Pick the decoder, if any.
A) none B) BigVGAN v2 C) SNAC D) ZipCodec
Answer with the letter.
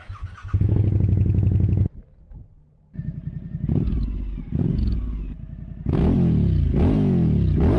A